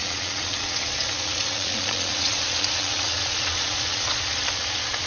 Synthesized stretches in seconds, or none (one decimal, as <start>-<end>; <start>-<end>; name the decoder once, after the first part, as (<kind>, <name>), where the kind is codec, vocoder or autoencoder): 0.0-5.1 (vocoder, Vocos)

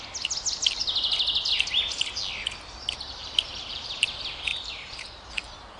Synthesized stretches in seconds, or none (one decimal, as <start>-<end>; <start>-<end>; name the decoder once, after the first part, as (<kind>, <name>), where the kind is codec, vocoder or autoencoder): 3.2-3.8 (vocoder, BigVGAN v2); 4.5-5.3

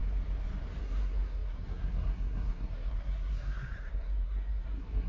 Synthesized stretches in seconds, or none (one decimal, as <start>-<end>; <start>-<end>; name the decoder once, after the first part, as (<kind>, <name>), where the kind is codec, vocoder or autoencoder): 0.8-5.1 (codec, SNAC)

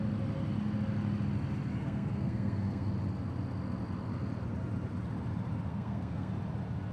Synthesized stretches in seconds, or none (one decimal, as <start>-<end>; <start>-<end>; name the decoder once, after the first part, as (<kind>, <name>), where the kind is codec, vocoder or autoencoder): 1.8-2.9 (codec, SNAC); 5.7-6.3

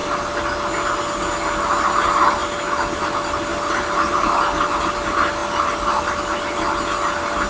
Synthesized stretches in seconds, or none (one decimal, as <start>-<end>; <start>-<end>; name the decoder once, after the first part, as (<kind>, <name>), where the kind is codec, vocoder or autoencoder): none

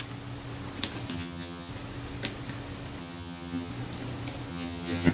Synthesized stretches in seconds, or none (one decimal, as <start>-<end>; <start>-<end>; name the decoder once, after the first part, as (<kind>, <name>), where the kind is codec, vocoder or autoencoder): 1.1-1.7 (vocoder, HiFi-GAN); 3.0-3.7; 4.5-5.1

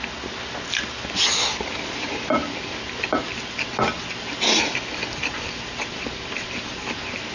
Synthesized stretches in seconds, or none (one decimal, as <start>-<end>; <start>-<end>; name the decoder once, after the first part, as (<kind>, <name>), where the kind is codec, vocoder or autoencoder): none